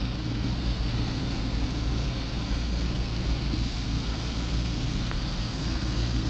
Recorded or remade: remade